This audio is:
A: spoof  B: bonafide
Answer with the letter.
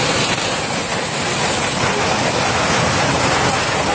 B